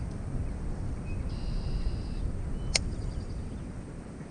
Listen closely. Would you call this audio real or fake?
real